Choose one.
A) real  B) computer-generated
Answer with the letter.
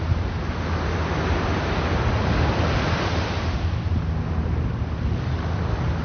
A